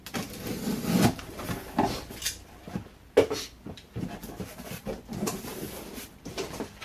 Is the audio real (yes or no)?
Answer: yes